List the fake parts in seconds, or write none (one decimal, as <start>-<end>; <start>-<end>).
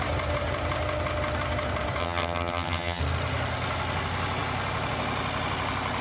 2.0-3.0